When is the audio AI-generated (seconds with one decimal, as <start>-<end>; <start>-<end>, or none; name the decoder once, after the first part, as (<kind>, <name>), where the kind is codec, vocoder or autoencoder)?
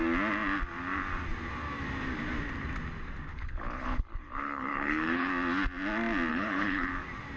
3.3-5.3 (codec, HILCodec); 6.3-6.9